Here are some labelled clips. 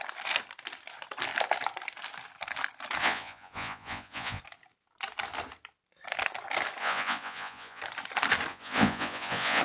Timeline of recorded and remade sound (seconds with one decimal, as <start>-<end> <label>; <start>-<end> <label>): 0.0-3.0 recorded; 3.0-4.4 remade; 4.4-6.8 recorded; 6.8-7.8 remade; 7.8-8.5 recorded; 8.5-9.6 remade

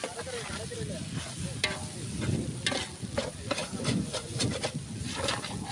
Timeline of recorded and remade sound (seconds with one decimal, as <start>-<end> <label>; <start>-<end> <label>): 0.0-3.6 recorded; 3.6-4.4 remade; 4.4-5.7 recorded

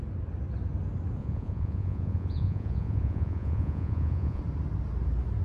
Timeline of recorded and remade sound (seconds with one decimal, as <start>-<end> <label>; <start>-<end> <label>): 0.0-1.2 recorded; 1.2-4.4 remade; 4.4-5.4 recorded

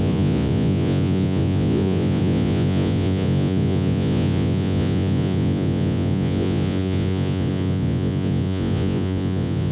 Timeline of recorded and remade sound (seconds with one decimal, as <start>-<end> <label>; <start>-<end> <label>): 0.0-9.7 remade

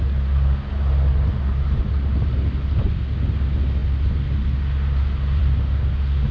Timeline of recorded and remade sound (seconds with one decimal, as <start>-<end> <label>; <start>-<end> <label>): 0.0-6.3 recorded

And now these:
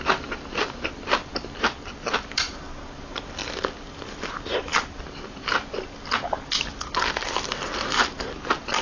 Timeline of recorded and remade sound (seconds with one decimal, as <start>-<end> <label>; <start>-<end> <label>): 0.0-8.8 recorded

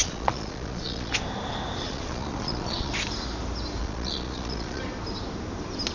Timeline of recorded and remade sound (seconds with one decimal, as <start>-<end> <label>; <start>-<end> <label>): 0.0-1.1 remade; 1.1-1.8 recorded; 1.8-2.9 remade; 2.9-3.8 recorded; 3.8-4.8 remade; 4.8-5.9 recorded

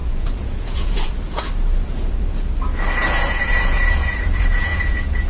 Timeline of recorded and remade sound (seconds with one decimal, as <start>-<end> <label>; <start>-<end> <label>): 0.0-1.4 remade; 1.4-3.0 recorded; 3.0-5.3 remade